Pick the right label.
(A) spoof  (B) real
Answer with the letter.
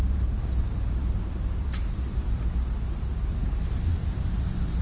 A